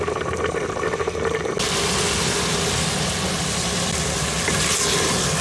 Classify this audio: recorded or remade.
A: recorded